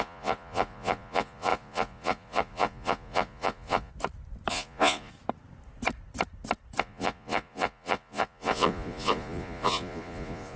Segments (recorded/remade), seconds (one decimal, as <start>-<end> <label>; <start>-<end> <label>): 0.0-3.9 remade; 3.9-4.5 recorded; 4.5-5.1 remade; 5.1-6.8 recorded; 6.8-10.6 remade